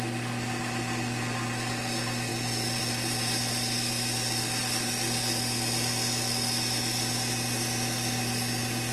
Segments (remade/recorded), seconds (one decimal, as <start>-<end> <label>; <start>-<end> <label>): 0.0-8.9 recorded